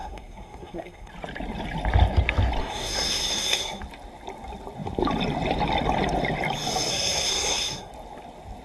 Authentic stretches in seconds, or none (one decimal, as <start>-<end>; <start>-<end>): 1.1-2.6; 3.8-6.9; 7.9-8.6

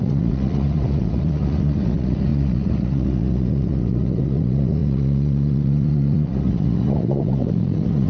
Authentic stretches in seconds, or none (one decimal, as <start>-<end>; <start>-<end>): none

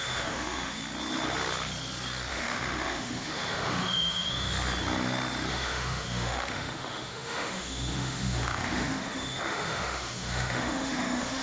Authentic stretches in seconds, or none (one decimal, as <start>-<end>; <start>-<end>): 0.8-2.3; 4.5-5.5

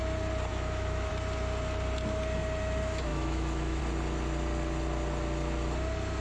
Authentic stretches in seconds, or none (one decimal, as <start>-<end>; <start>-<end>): 0.0-0.5; 1.1-3.1; 3.8-6.2